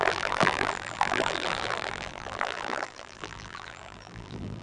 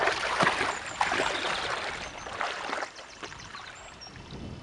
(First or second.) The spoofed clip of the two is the first